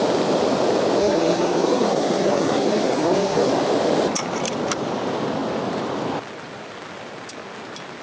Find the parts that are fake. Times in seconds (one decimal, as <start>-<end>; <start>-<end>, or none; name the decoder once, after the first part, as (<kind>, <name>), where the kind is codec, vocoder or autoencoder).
1.0-3.5 (codec, SNAC)